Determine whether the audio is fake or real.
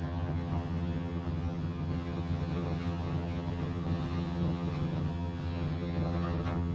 fake